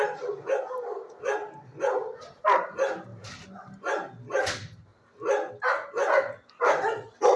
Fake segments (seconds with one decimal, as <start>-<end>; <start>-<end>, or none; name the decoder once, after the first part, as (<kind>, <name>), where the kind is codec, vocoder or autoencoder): 4.9-5.5 (vocoder, BigVGAN v2)